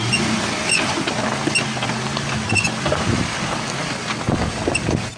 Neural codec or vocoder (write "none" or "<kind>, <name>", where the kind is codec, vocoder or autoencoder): none